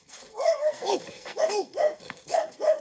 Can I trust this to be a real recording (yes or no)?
no